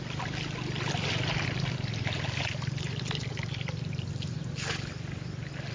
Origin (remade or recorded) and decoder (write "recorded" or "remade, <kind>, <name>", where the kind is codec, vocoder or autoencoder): recorded